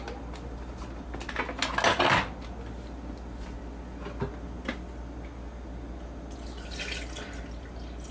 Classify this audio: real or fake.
real